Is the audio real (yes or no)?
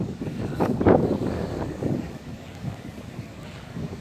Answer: no